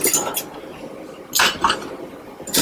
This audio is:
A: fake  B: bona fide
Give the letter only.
B